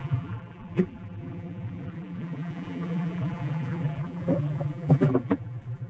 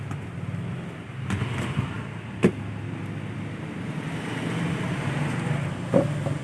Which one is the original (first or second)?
second